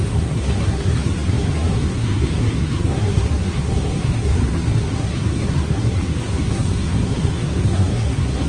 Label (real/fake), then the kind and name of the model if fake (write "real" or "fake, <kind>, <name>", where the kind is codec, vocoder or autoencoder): fake, codec, SNAC